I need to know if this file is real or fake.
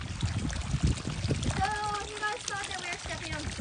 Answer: real